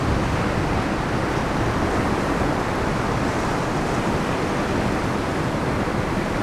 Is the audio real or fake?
fake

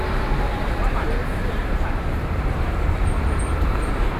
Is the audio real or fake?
fake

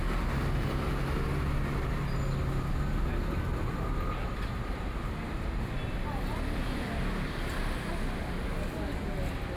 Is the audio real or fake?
real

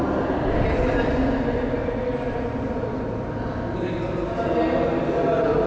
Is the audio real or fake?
real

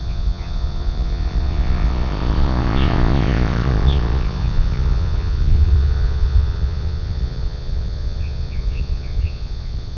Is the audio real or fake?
fake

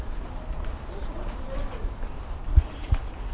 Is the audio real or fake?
real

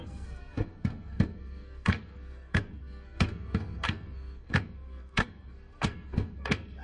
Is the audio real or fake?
fake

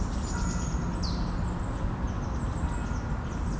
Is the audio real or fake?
real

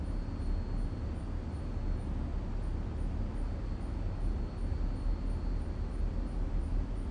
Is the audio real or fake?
real